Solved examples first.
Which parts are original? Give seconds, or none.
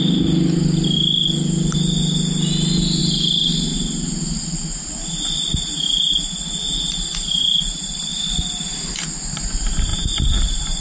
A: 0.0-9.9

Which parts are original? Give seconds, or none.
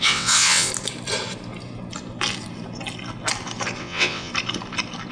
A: 0.7-3.8; 4.3-5.1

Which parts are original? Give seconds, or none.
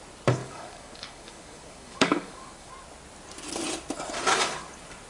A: 0.0-0.4; 2.7-5.1